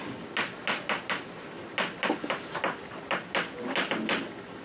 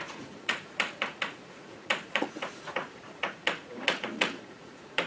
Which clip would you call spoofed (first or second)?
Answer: second